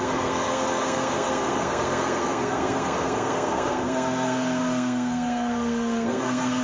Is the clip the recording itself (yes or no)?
no